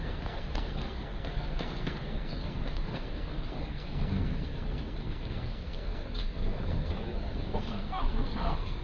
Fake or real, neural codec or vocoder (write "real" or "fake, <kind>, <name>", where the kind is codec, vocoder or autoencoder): fake, codec, SNAC